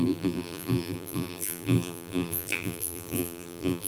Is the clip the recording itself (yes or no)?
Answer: no